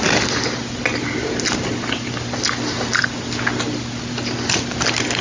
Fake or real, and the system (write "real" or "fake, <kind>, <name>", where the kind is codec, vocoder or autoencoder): real